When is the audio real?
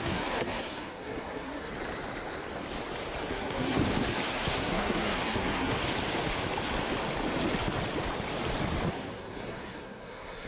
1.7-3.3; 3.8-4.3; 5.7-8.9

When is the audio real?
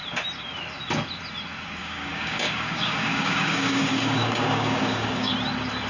0.0-1.8; 5.3-5.9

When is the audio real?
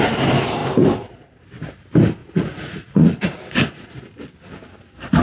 0.0-2.2; 4.1-5.2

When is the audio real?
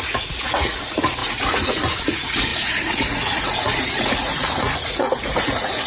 none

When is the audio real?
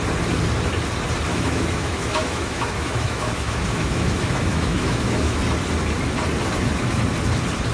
0.0-1.3; 5.4-7.7